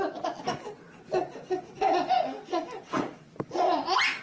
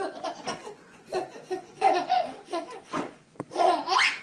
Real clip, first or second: first